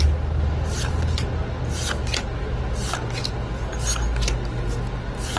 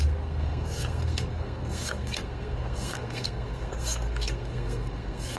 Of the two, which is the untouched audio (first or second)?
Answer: first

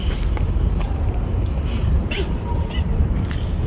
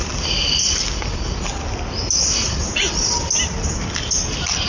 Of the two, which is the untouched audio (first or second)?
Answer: second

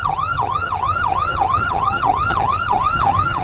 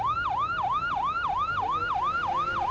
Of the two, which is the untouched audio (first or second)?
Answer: second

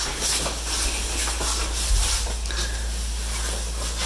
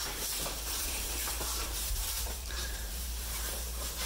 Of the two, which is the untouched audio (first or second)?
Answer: first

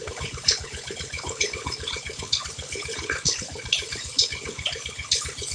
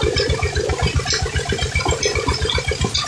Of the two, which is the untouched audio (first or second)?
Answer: second